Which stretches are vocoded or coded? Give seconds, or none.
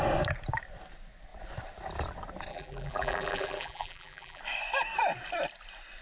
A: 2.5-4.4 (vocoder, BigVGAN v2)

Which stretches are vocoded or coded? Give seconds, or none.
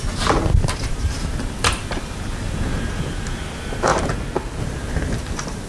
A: 0.9-3.9 (vocoder, BigVGAN v2); 4.6-5.7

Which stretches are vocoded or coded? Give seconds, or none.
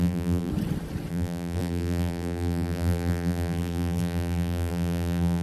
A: 0.0-0.5 (vocoder, BigVGAN v2); 1.1-5.4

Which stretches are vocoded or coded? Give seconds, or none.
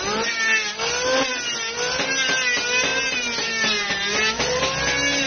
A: 2.9-4.6 (vocoder, BigVGAN v2)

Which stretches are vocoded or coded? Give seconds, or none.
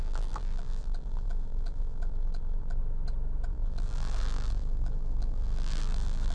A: 0.0-2.8 (vocoder, BigVGAN v2); 3.5-6.3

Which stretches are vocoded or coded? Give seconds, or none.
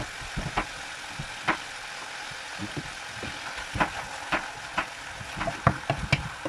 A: none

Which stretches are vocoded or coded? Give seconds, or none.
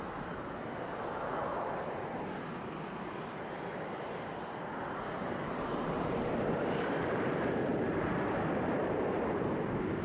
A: 0.0-1.5 (vocoder, BigVGAN v2); 5.4-8.1; 8.6-10.0